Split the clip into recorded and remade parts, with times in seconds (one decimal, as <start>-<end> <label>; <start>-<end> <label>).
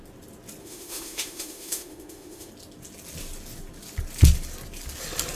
0.0-0.6 recorded; 0.6-2.5 remade; 2.5-5.4 recorded